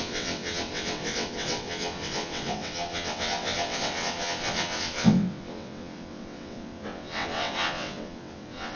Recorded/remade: remade